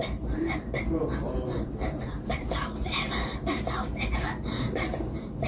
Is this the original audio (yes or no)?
no